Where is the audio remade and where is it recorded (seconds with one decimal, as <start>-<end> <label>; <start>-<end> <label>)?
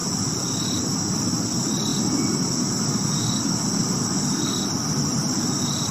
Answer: 0.0-5.9 recorded